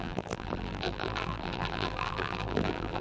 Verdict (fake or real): fake